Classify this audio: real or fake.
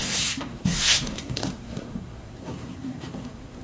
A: fake